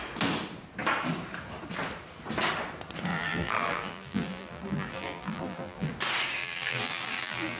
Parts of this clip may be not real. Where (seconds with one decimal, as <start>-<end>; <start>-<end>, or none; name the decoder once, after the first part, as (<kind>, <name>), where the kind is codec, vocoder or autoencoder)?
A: 3.1-5.9 (vocoder, BigVGAN v2); 6.4-7.6